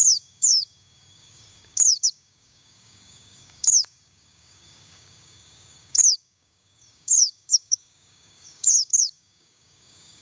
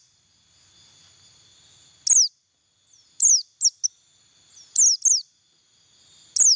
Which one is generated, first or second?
first